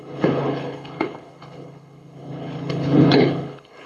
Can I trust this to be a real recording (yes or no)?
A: no